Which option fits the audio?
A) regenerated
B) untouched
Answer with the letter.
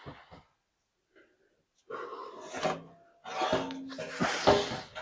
B